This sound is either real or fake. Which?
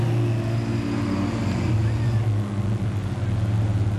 real